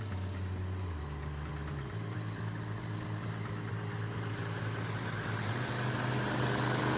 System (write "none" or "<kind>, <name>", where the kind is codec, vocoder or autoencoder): none